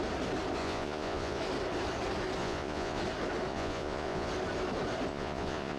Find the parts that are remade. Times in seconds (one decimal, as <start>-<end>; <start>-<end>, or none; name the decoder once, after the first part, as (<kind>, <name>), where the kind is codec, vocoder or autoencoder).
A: 0.6-1.4 (vocoder, Vocos); 2.4-3.0; 3.5-4.3; 5.1-5.8